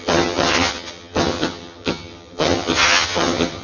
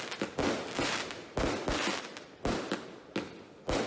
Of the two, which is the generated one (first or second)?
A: first